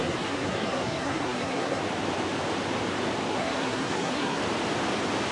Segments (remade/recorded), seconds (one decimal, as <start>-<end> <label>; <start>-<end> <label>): 0.0-1.8 remade; 1.8-3.3 recorded; 3.3-4.4 remade; 4.4-5.3 recorded